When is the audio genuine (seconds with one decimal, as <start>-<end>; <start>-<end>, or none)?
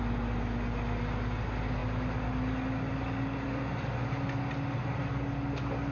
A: 0.0-5.9